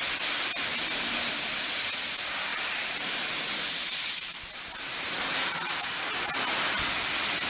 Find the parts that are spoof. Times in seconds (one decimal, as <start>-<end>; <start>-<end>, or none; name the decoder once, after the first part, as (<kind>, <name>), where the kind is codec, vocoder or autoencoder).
none